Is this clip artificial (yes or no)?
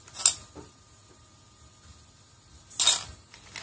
no